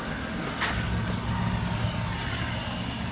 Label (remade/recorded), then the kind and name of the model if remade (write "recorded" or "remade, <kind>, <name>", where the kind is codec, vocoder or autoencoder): recorded